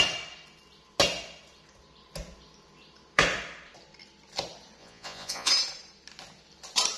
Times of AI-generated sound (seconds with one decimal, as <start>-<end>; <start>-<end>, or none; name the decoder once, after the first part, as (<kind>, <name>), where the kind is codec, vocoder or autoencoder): 4.8-5.5 (vocoder, Vocos)